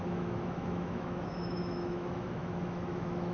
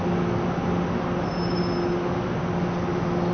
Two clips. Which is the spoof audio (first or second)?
first